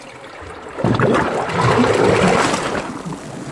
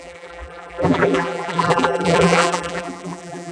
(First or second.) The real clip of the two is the first